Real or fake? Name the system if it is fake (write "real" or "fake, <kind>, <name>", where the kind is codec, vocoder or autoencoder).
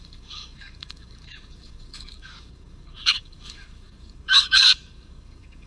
fake, codec, DAC